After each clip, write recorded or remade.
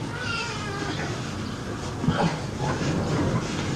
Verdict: recorded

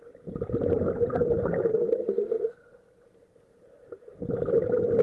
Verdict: recorded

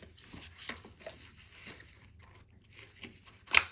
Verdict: remade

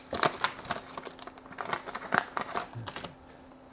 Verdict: recorded